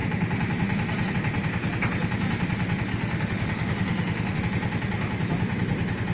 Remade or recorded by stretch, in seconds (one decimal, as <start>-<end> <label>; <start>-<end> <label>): 0.0-2.9 recorded; 2.9-4.4 remade; 4.4-6.1 recorded